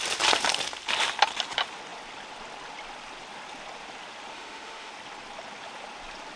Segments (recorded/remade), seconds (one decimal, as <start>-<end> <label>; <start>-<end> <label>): 0.0-4.3 recorded; 4.3-4.9 remade; 4.9-6.4 recorded

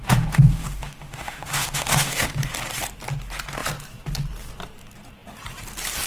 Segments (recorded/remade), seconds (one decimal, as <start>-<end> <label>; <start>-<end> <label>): 0.0-2.4 remade; 2.4-6.1 recorded

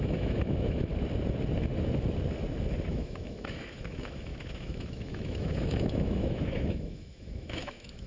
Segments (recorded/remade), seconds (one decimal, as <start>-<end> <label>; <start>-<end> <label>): 0.0-0.9 remade; 0.9-2.9 recorded; 2.9-8.1 remade

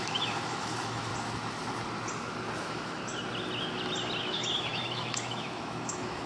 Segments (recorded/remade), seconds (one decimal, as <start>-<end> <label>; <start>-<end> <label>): 0.0-1.1 remade; 1.1-2.6 recorded; 2.6-3.0 remade; 3.0-4.2 recorded; 4.2-6.3 remade